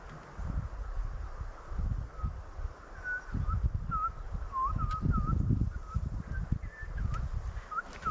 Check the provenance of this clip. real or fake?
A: real